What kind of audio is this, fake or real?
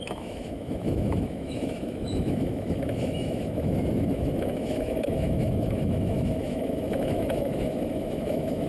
fake